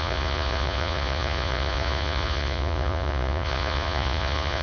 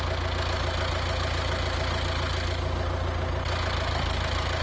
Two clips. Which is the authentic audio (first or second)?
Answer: second